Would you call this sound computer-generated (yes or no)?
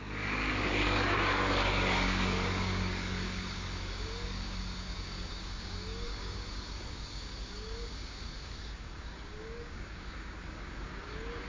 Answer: yes